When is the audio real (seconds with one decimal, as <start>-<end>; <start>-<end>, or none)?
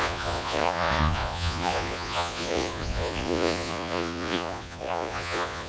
none